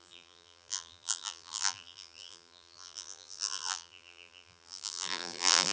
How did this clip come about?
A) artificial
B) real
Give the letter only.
A